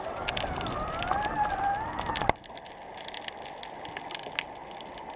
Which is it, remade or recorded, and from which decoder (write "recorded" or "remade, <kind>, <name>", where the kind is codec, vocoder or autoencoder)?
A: recorded